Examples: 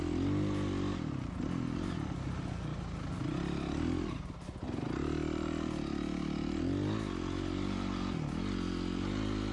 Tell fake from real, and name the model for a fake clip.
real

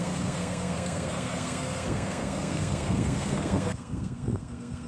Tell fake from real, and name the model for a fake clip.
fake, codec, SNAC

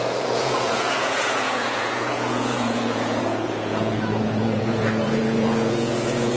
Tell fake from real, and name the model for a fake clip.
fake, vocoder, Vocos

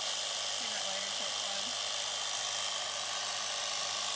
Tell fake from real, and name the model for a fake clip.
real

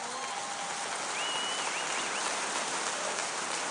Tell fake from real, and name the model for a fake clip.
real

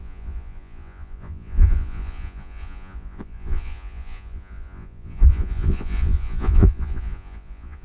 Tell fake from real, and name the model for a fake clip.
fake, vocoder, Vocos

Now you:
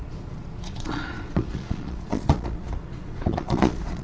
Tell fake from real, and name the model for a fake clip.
fake, vocoder, Vocos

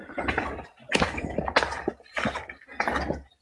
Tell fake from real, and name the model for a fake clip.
real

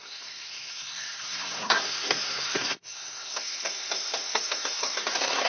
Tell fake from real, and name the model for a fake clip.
fake, codec, SNAC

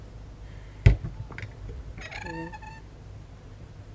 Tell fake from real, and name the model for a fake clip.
real